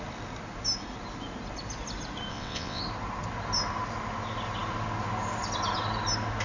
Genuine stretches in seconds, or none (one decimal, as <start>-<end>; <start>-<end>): 0.0-2.3; 2.8-6.4